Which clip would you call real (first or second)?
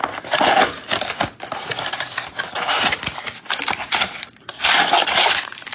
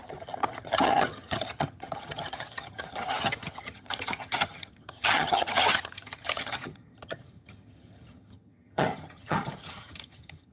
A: first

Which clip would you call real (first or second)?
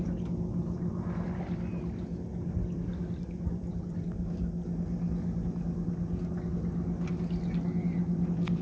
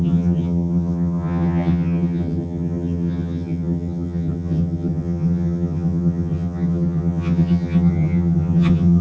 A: first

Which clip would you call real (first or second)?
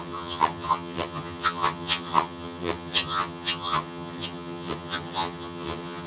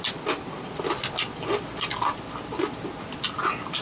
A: second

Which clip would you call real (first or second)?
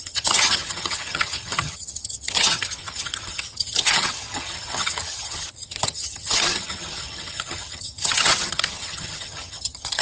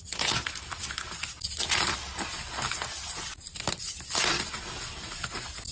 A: second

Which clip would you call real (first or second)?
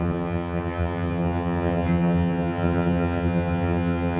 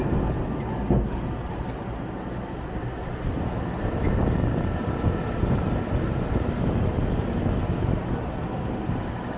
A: second